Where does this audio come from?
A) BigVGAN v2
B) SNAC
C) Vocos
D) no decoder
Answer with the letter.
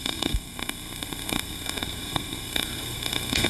B